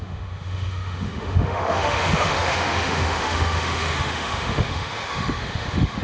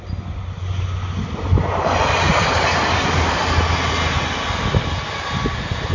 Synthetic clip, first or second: first